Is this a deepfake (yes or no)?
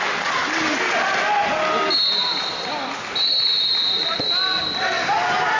no